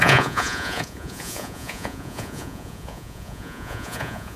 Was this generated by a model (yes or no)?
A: yes